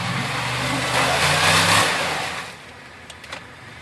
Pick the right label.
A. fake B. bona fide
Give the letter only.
B